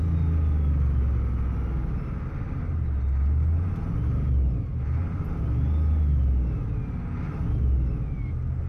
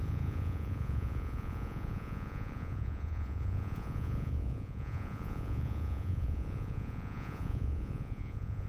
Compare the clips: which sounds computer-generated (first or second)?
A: second